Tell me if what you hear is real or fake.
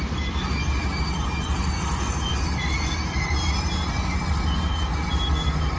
real